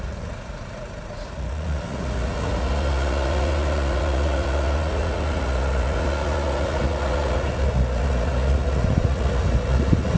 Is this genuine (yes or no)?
no